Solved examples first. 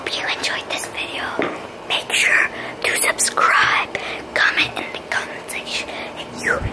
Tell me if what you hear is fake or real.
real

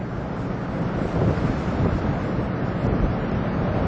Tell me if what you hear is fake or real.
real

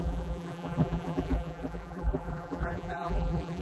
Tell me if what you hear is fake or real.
fake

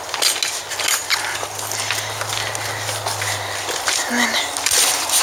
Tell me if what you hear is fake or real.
real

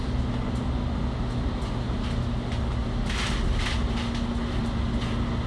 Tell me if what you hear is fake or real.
real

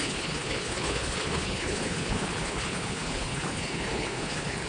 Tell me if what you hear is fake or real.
fake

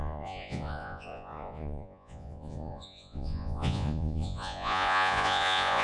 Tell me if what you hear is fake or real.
fake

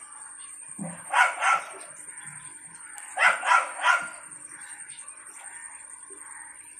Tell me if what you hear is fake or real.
real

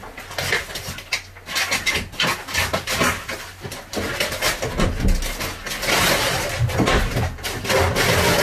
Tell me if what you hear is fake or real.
real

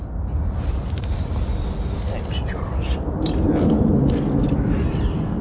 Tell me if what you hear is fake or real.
real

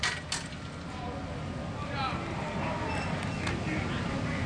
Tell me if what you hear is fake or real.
real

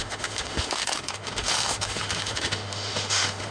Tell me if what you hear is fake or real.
fake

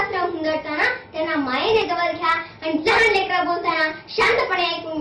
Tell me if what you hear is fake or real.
real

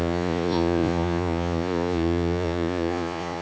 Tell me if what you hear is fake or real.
fake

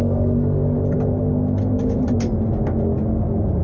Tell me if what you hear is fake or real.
real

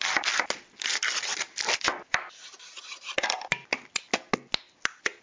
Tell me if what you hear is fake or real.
real